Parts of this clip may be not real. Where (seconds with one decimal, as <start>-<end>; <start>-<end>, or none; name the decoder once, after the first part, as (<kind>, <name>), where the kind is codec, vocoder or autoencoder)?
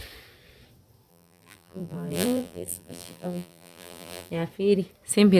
1.1-4.3 (vocoder, BigVGAN v2)